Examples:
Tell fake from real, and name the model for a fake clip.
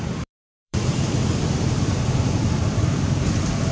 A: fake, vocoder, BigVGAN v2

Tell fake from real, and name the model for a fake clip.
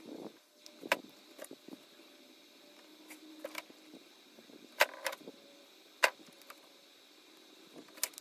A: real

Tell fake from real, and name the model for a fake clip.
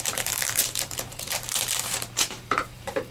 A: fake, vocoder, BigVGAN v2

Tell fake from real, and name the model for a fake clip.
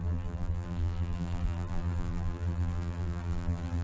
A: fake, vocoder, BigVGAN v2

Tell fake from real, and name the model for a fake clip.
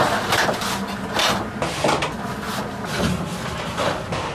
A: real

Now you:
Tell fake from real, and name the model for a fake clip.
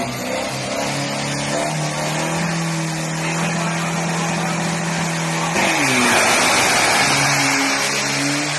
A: real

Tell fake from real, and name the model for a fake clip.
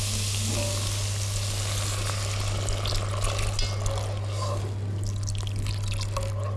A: real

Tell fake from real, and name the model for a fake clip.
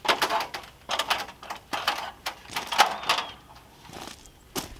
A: fake, vocoder, BigVGAN v2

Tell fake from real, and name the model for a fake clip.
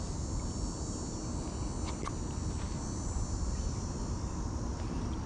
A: real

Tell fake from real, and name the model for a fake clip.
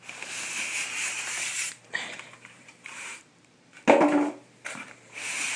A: fake, vocoder, BigVGAN v2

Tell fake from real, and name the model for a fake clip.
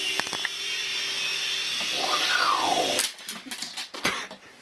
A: real